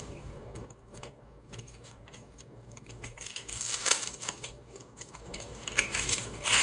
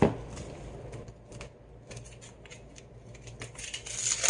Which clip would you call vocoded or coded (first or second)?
first